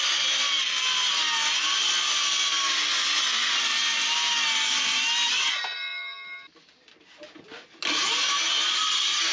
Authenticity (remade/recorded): recorded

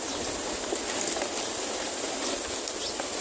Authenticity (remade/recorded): recorded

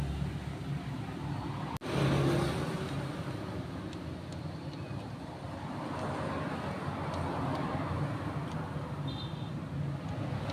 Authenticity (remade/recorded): recorded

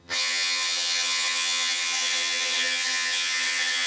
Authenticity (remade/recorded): remade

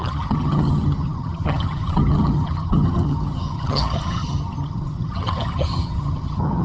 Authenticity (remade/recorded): remade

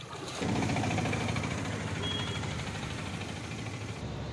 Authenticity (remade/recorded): remade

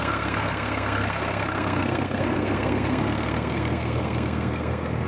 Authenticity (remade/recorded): remade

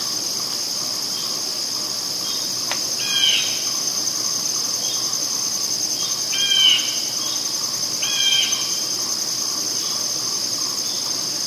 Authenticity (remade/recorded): recorded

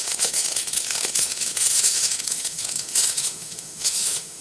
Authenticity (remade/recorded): remade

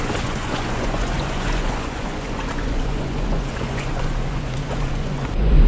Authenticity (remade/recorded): remade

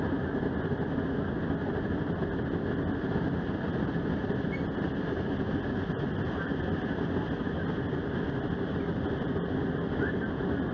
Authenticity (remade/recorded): recorded